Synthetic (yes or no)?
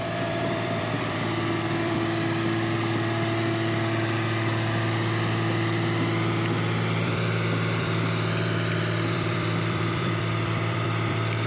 yes